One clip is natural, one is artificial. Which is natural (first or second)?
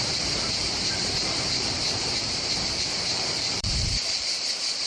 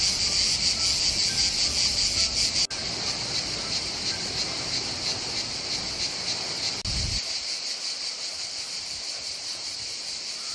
second